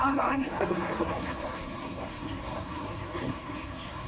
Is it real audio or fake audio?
fake